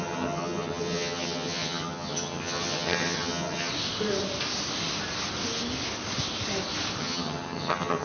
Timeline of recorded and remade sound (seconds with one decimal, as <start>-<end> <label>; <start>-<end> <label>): 0.0-3.7 remade; 3.7-7.0 recorded; 7.0-8.0 remade